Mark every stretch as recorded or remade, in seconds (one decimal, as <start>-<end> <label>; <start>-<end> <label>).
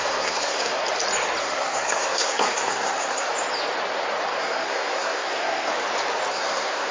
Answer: 0.0-0.8 remade; 0.8-1.4 recorded; 1.4-3.3 remade; 3.3-4.4 recorded; 4.4-5.7 remade; 5.7-6.3 recorded; 6.3-6.9 remade